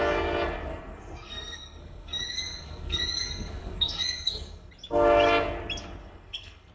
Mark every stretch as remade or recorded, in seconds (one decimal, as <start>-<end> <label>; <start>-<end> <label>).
0.0-0.7 recorded; 0.7-4.7 remade; 4.7-6.0 recorded; 6.0-6.7 remade